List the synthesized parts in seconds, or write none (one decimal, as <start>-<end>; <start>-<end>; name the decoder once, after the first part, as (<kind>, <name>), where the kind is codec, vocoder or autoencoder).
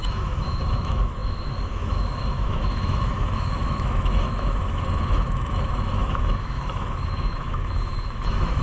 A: 0.0-8.6 (autoencoder, DAC-VAE)